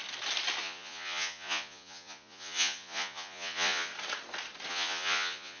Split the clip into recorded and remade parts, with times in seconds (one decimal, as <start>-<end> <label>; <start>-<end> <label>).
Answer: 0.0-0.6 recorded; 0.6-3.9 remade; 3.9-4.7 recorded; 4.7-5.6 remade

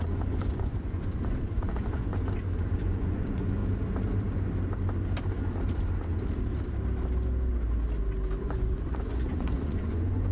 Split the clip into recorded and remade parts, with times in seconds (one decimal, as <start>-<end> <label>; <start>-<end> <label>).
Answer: 0.0-3.6 remade; 3.6-8.4 recorded; 8.4-10.3 remade

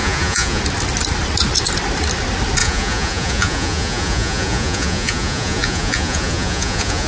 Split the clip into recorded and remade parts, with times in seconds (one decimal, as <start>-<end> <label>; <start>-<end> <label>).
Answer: 0.0-0.6 remade; 0.6-2.6 recorded; 2.6-7.1 remade

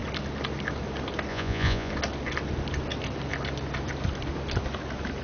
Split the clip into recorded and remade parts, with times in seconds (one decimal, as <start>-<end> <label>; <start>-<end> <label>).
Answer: 0.0-1.3 recorded; 1.3-1.9 remade; 1.9-5.2 recorded